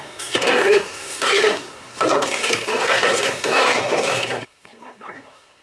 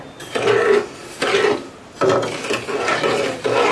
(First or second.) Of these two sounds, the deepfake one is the first